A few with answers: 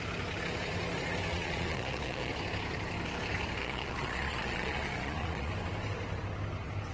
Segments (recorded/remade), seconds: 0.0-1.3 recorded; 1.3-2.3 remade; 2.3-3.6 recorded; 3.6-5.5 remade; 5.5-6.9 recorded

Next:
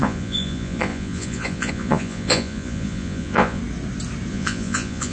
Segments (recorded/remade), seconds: 0.0-3.6 remade; 3.6-4.3 recorded; 4.3-5.1 remade

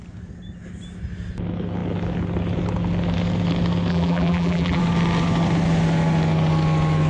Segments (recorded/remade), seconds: 0.0-3.9 recorded; 3.9-4.8 remade; 4.8-7.1 recorded

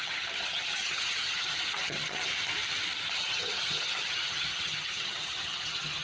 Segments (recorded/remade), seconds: 0.0-2.3 remade; 2.3-3.1 recorded; 3.1-6.0 remade

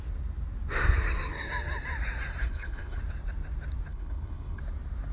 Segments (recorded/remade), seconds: 0.0-2.4 recorded; 2.4-3.0 remade; 3.0-3.9 recorded; 3.9-4.6 remade; 4.6-5.1 recorded

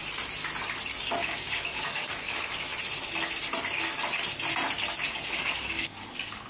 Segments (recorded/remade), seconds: 0.0-1.2 recorded; 1.2-2.7 remade; 2.7-5.1 recorded; 5.1-6.5 remade